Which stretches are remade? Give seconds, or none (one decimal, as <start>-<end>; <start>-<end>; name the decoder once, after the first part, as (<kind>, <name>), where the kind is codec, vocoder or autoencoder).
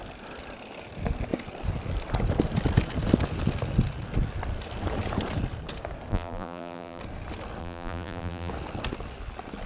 6.1-7.0 (vocoder, BigVGAN v2); 7.6-8.5